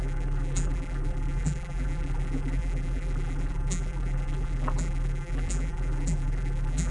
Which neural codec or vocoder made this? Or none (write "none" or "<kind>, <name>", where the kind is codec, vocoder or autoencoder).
vocoder, BigVGAN v2